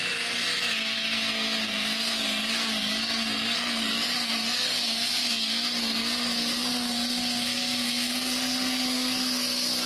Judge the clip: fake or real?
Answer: fake